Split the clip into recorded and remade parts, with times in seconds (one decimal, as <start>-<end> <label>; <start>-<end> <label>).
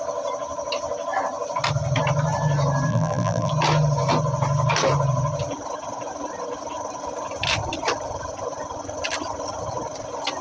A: 0.0-2.9 recorded; 2.9-3.5 remade; 3.5-10.4 recorded